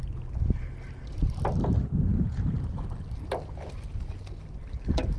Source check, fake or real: real